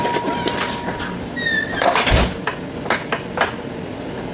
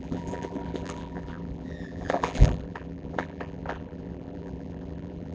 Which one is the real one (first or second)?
first